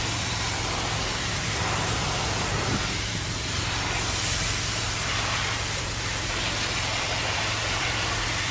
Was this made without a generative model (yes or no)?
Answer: no